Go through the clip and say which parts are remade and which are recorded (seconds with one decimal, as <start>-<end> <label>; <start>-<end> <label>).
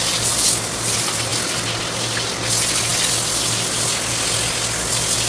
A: 0.0-5.3 recorded